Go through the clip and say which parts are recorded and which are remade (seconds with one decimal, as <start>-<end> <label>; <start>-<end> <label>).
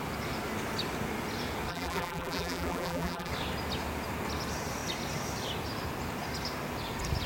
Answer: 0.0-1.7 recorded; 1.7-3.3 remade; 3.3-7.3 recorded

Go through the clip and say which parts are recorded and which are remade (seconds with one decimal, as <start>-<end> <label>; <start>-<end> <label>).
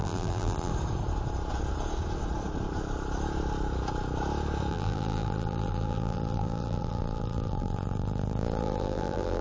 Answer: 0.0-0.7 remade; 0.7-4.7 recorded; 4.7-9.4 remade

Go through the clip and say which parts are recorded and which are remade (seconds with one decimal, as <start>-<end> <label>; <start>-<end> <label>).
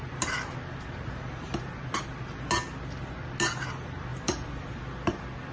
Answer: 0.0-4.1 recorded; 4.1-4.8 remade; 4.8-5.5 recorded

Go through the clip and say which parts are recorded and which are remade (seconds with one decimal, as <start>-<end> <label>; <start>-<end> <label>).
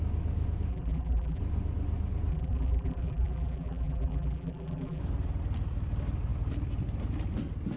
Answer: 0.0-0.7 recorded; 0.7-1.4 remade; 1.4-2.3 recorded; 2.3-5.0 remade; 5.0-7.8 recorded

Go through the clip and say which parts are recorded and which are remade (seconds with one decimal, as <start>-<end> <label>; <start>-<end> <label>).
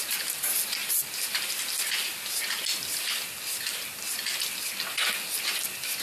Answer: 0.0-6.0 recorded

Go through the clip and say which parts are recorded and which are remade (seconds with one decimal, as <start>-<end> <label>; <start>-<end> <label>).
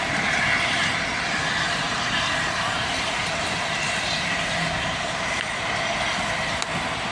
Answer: 0.0-1.4 recorded; 1.4-5.7 remade; 5.7-7.1 recorded